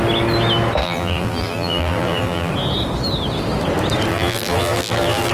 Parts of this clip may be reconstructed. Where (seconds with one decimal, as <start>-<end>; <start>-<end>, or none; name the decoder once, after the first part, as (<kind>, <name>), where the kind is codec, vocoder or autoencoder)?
0.8-2.5 (vocoder, BigVGAN v2); 4.1-5.3